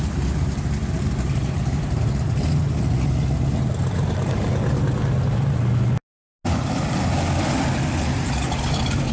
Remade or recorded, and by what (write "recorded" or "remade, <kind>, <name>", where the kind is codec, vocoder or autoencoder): recorded